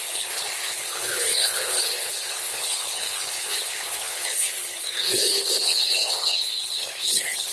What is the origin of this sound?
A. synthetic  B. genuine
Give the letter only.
A